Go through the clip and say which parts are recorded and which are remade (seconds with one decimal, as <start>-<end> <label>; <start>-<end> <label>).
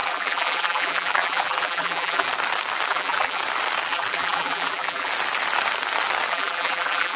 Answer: 0.0-2.3 remade; 2.3-2.9 recorded; 2.9-3.4 remade; 3.4-3.9 recorded; 3.9-5.1 remade; 5.1-6.3 recorded; 6.3-7.2 remade